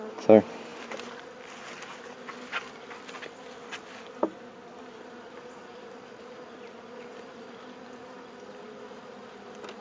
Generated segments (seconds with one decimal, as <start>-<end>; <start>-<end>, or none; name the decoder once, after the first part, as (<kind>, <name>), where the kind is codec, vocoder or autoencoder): none